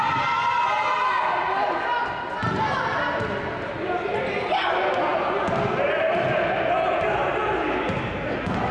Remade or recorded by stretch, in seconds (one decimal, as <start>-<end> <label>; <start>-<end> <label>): 0.0-8.7 recorded